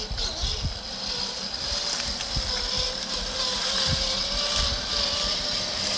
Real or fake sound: real